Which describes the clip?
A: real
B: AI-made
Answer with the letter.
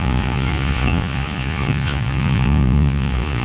B